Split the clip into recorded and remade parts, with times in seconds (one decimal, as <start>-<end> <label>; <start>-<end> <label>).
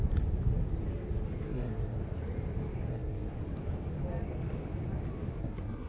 0.0-1.4 recorded; 1.4-2.0 remade; 2.0-2.9 recorded; 2.9-3.3 remade; 3.3-5.4 recorded; 5.4-5.9 remade